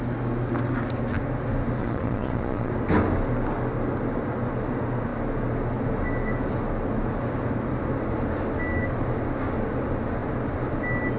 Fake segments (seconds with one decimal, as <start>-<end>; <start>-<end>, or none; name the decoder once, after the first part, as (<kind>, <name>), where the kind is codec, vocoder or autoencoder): 1.8-2.7 (vocoder, Vocos)